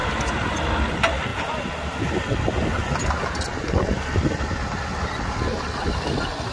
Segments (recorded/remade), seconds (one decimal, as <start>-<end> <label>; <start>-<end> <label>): 0.0-0.6 remade; 0.6-6.5 recorded